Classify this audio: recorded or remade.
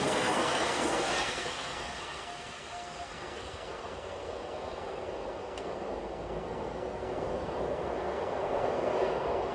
remade